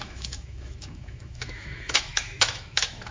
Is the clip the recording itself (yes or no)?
no